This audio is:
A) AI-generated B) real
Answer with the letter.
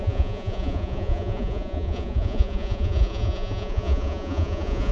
A